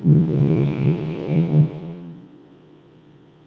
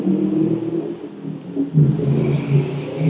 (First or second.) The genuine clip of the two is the second